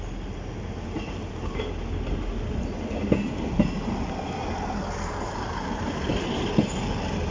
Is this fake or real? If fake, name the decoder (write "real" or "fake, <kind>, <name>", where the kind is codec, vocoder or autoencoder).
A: real